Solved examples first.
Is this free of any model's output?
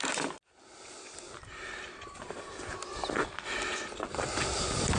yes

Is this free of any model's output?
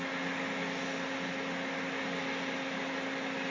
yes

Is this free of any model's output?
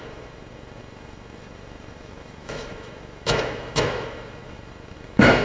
no